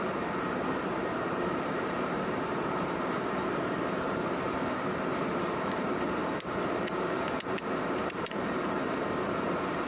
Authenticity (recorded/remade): remade